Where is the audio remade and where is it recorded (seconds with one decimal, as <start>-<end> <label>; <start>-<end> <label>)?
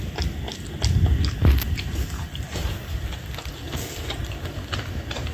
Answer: 0.0-5.3 recorded